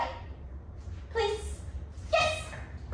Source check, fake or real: real